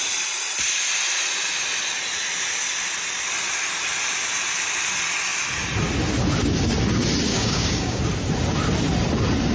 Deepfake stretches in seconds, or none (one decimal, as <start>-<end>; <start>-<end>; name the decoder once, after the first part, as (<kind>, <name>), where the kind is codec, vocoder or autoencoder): 7.3-8.0 (codec, DAC)